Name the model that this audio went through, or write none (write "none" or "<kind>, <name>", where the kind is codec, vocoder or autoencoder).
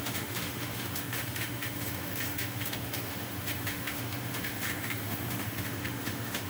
autoencoder, DAC-VAE